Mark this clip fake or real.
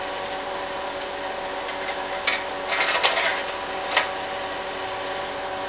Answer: real